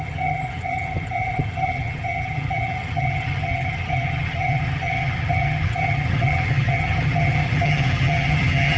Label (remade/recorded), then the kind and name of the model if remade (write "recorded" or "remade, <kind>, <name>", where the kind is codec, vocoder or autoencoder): remade, vocoder, HiFi-GAN